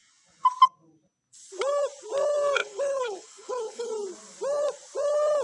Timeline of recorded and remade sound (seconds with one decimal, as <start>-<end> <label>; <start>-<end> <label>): 0.0-2.6 recorded; 2.6-3.9 remade; 3.9-5.4 recorded

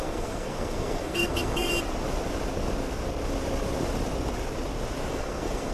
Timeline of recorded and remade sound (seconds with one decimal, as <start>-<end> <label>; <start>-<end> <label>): 0.0-1.7 remade; 1.7-5.1 recorded; 5.1-5.7 remade